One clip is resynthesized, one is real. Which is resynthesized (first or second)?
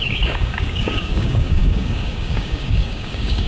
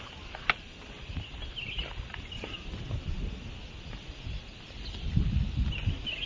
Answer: first